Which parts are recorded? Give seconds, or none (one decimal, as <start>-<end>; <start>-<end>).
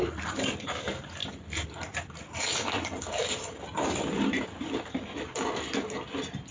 0.0-1.2; 4.9-6.5